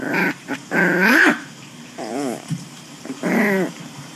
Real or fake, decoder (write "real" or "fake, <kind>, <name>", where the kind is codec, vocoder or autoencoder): fake, vocoder, BigVGAN v2